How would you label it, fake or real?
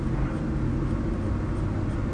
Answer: real